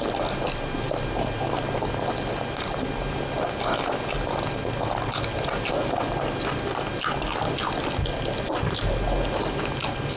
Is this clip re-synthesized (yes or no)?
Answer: no